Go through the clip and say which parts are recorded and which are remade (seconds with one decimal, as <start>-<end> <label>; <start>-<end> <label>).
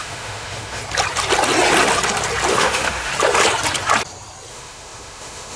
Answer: 0.0-0.8 remade; 0.8-2.5 recorded; 2.5-3.1 remade; 3.1-4.5 recorded; 4.5-5.6 remade